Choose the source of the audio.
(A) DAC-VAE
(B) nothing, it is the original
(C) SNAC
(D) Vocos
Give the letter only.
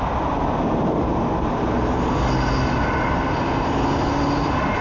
B